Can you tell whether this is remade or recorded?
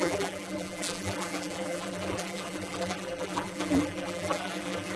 remade